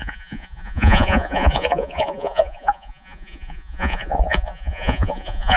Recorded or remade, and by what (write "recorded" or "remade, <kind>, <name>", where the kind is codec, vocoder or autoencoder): remade, vocoder, Vocos